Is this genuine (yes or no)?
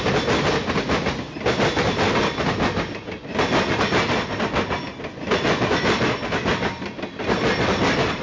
yes